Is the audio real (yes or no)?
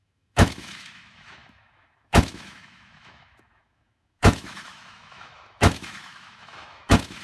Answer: no